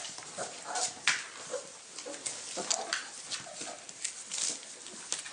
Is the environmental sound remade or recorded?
recorded